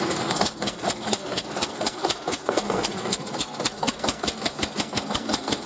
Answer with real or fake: fake